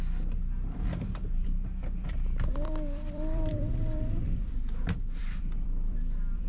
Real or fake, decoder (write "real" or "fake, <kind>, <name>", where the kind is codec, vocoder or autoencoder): fake, vocoder, BigVGAN v2